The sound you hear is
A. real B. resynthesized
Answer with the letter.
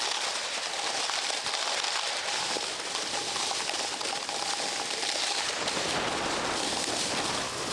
A